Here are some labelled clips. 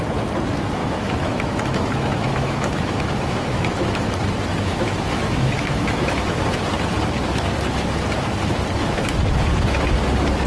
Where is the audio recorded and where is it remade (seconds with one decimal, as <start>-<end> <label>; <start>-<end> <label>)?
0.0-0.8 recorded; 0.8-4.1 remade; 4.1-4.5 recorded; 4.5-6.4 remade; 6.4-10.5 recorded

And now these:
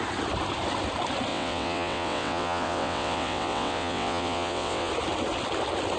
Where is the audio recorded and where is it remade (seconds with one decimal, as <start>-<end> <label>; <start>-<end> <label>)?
0.0-1.3 recorded; 1.3-4.9 remade; 4.9-6.0 recorded

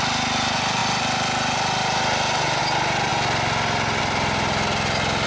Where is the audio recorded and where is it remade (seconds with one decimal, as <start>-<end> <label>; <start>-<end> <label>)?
0.0-5.3 recorded

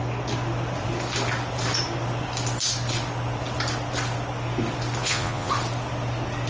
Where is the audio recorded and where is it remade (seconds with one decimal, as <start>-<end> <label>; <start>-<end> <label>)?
0.0-5.0 recorded; 5.0-5.5 remade; 5.5-6.5 recorded

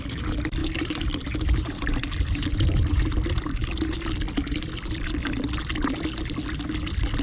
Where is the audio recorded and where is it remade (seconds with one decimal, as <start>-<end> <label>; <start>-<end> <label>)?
0.0-0.6 recorded; 0.6-3.0 remade; 3.0-7.2 recorded